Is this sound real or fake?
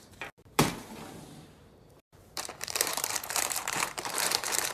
fake